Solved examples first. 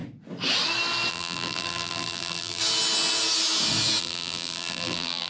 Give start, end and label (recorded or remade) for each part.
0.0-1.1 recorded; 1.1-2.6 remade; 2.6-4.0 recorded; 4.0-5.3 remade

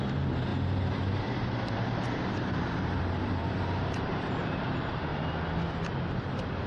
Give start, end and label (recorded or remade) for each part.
0.0-5.1 remade; 5.1-5.7 recorded; 5.7-6.7 remade

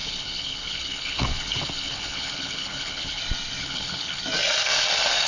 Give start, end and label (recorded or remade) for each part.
0.0-3.2 remade; 3.2-3.6 recorded; 3.6-4.2 remade; 4.2-5.3 recorded

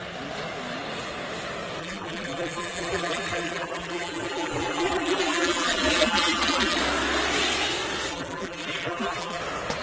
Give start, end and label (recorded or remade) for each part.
0.0-1.8 recorded; 1.8-6.8 remade; 6.8-8.1 recorded; 8.1-9.4 remade; 9.4-9.8 recorded

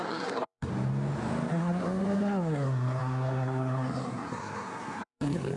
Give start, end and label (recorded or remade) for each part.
0.0-0.7 remade; 0.7-1.5 recorded; 1.5-5.6 remade